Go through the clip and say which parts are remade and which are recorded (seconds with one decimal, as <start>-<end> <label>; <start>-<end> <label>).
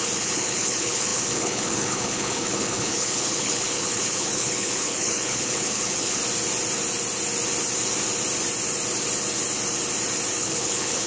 0.0-6.2 remade; 6.2-10.4 recorded; 10.4-11.1 remade